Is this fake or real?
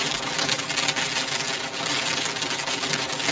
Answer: real